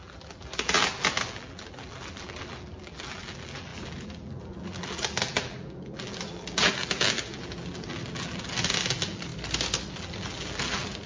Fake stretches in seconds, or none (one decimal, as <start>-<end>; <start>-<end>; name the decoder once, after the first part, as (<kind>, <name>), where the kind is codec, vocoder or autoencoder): 0.0-9.3 (vocoder, BigVGAN v2); 9.9-11.1